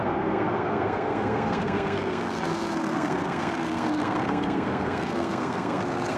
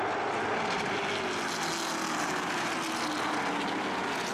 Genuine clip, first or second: second